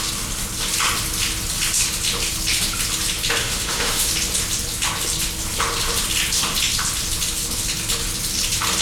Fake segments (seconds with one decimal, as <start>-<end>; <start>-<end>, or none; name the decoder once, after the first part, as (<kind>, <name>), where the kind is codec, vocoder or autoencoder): 3.4-4.1 (autoencoder, DAC-VAE)